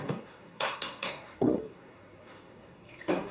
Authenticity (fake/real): fake